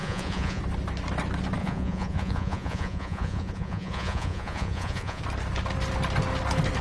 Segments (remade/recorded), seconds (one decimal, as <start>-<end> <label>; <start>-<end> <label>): 0.0-0.6 remade; 0.6-1.6 recorded; 1.6-5.2 remade; 5.2-6.8 recorded